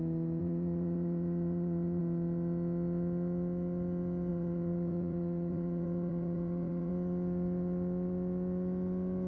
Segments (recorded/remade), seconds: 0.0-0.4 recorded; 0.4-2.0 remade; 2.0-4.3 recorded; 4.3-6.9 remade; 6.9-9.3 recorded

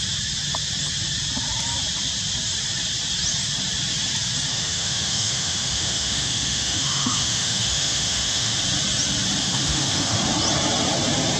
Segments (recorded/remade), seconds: 0.0-4.5 recorded; 4.5-8.6 remade; 8.6-9.4 recorded; 9.4-10.2 remade; 10.2-11.4 recorded

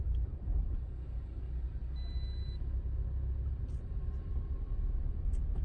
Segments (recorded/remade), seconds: 0.0-0.5 remade; 0.5-3.6 recorded; 3.6-5.6 remade

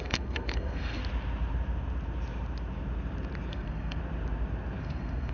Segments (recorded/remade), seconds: 0.0-1.0 remade; 1.0-3.5 recorded; 3.5-4.0 remade; 4.0-4.8 recorded; 4.8-5.3 remade

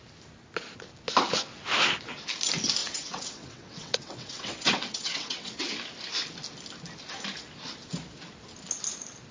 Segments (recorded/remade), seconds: 0.0-2.8 recorded; 2.8-5.6 remade; 5.6-9.3 recorded

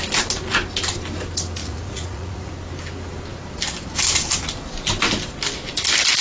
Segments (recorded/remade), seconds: 0.0-1.6 recorded; 1.6-2.5 remade; 2.5-6.2 recorded

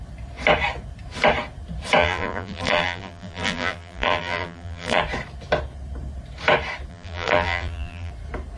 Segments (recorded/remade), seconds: 0.0-2.0 recorded; 2.0-5.0 remade; 5.0-6.9 recorded; 6.9-8.1 remade; 8.1-8.6 recorded